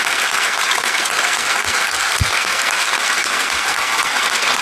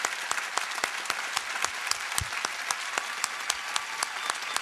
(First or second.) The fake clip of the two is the first